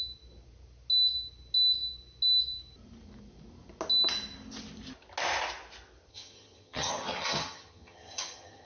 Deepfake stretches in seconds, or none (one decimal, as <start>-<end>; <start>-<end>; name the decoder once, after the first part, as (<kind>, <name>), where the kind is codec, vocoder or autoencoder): 6.1-8.7 (vocoder, HiFi-GAN)